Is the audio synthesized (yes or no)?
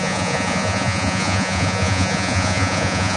yes